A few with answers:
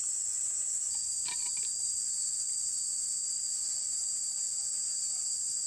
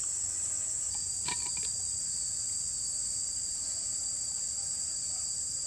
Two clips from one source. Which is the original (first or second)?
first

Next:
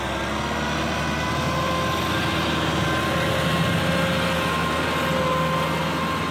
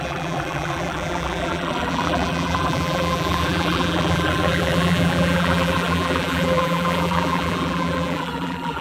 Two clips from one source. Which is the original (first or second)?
first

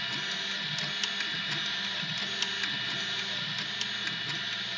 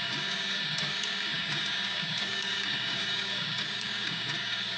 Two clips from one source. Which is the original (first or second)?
first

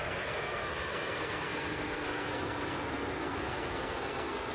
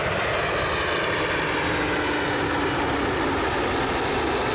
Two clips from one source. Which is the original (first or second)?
second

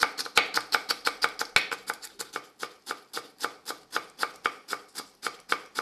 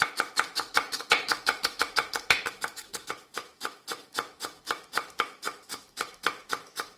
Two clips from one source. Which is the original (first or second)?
first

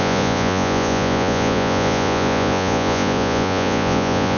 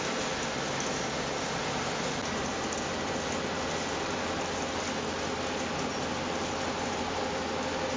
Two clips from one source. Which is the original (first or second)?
second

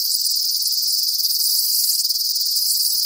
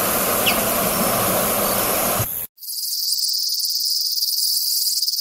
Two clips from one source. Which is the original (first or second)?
second